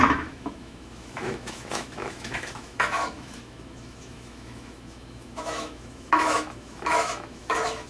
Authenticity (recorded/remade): remade